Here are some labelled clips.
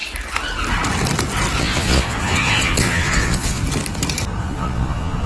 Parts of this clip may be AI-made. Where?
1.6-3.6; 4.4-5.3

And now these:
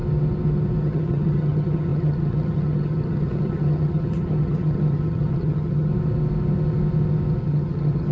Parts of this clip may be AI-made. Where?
0.8-5.9; 7.4-8.1